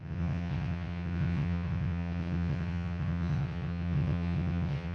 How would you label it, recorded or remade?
remade